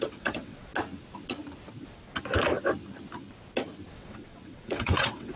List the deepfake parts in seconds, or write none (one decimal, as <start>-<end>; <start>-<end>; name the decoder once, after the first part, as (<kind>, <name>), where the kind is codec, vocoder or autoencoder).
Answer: 0.0-0.7 (vocoder, WaveNeXt); 3.9-5.4